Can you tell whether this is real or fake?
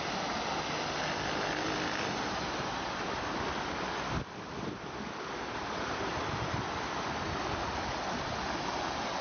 real